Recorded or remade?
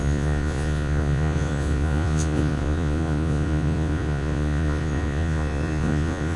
remade